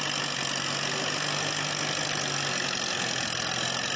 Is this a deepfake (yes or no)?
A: no